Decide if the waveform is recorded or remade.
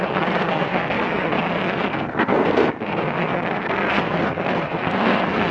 remade